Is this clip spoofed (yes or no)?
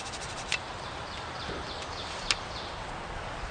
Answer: no